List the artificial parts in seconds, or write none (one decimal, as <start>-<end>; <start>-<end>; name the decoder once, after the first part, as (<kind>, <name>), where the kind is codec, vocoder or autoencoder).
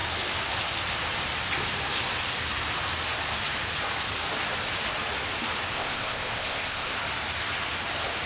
5.7-6.9 (codec, ZipCodec)